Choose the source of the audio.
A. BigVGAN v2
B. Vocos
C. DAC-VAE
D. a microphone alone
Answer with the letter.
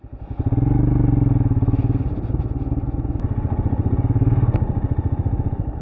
D